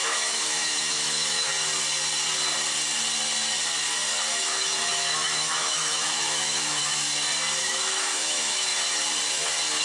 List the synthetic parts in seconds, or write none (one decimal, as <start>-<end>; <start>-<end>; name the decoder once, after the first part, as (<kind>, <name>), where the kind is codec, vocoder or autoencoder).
0.0-1.5 (autoencoder, DAC-VAE); 4.3-6.8; 7.6-8.7